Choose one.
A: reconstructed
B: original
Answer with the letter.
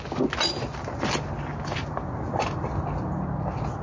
B